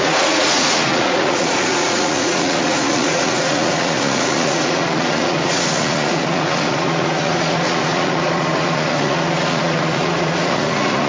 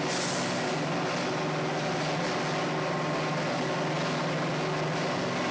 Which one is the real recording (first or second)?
second